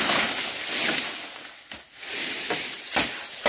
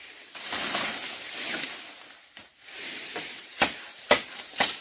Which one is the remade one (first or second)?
second